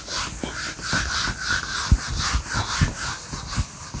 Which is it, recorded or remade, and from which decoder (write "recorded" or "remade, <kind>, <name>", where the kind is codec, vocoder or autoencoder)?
recorded